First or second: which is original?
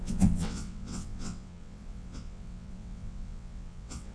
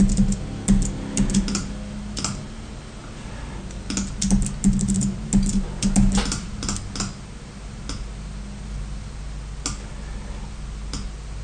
second